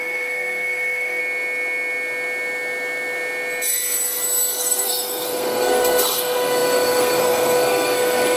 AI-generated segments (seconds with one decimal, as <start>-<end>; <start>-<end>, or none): 0.0-1.2; 4.6-8.4